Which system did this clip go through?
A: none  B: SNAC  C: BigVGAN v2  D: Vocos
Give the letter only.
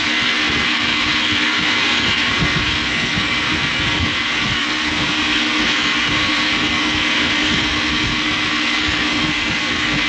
B